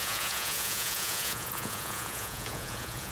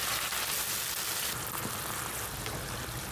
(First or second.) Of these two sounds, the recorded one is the second